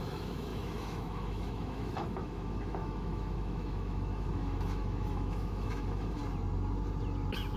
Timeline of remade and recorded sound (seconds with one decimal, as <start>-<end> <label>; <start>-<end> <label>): 0.0-6.2 remade; 6.2-7.6 recorded